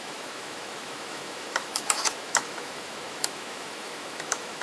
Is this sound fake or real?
fake